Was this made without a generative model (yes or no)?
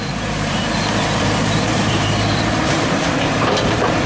no